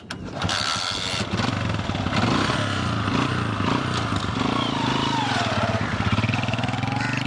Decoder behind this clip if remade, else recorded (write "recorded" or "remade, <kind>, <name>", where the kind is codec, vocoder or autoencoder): recorded